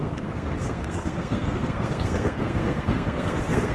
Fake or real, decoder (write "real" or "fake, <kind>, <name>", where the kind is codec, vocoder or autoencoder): fake, codec, SNAC